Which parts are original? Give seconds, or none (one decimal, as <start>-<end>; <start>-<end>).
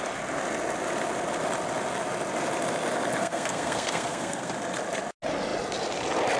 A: 0.0-3.2; 4.5-6.4